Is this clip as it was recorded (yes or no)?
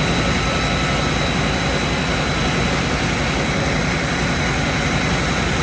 yes